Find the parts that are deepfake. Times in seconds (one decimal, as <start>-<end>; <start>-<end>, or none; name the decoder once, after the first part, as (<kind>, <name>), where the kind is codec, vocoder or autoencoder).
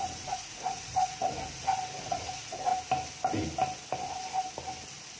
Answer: 0.0-1.2 (vocoder, Vocos); 2.0-2.7